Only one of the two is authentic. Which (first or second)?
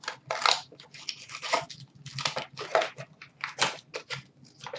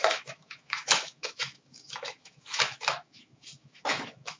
first